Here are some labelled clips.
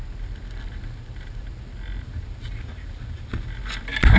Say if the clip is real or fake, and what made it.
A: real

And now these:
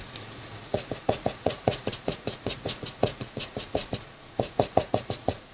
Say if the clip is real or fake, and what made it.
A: fake, vocoder, Vocos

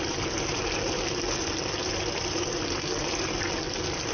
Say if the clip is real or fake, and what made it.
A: real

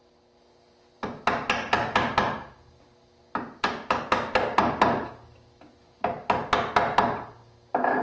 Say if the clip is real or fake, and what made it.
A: real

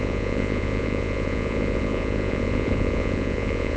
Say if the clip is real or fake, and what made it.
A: fake, vocoder, Vocos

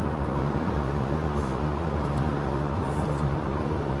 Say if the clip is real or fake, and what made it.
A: fake, vocoder, Vocos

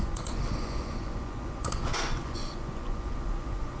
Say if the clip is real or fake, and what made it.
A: fake, vocoder, Vocos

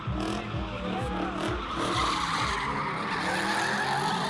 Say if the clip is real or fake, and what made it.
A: real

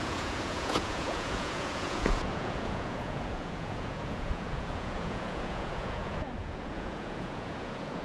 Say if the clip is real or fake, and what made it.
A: fake, vocoder, Vocos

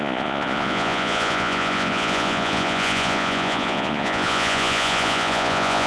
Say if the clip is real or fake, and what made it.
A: fake, vocoder, Vocos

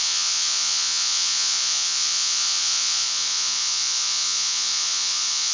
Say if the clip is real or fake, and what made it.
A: fake, vocoder, Vocos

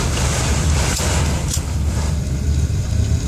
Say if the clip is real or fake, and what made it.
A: real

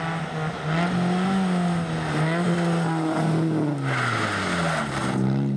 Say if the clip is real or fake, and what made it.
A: real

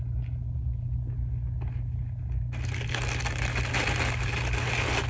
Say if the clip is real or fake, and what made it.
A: real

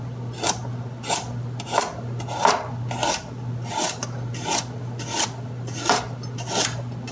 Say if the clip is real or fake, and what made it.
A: real